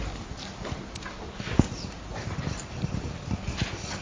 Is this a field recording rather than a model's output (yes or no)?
yes